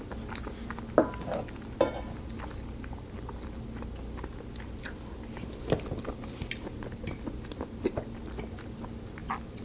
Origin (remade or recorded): recorded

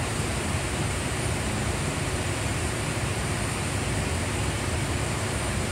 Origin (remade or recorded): remade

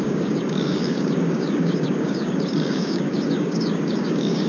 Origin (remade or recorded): remade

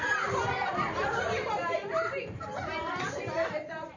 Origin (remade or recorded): remade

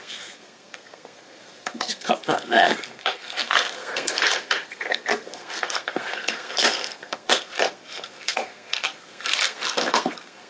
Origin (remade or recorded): remade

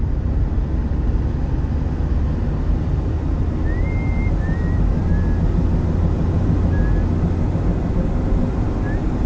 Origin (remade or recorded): recorded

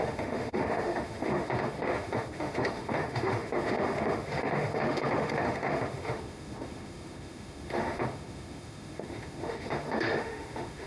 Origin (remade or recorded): remade